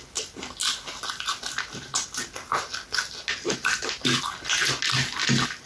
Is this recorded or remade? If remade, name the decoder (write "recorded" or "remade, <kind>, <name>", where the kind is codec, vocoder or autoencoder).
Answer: recorded